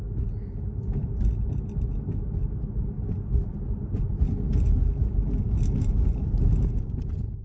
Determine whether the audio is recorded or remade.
recorded